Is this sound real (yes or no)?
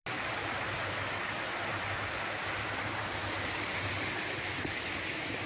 yes